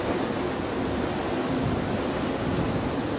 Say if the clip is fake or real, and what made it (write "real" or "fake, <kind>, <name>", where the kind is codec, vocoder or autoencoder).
real